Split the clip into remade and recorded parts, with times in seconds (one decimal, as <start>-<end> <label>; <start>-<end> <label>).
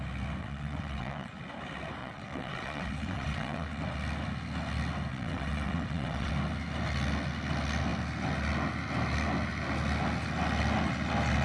0.0-0.4 recorded; 0.4-1.3 remade; 1.3-2.0 recorded; 2.0-3.8 remade; 3.8-5.1 recorded; 5.1-6.3 remade; 6.3-11.4 recorded